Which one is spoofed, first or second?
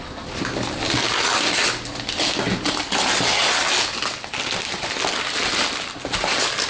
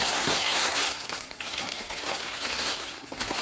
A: second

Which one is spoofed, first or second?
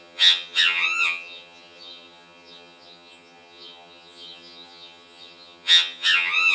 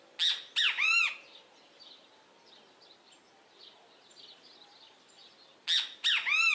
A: first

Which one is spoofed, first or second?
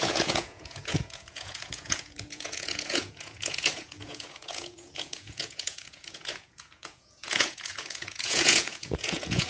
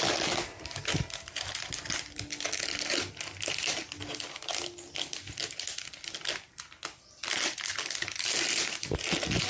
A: first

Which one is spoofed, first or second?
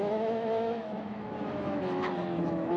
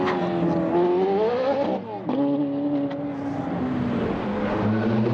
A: first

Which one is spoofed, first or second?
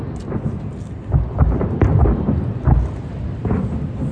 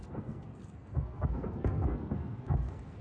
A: second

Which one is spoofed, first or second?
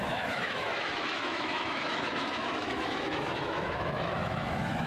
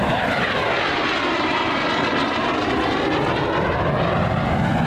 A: first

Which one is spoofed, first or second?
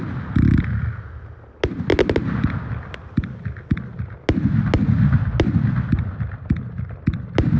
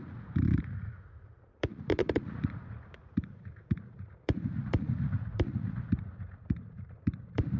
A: second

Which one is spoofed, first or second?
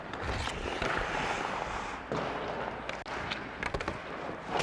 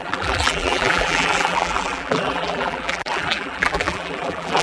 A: second